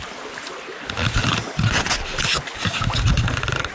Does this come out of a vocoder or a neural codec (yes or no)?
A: no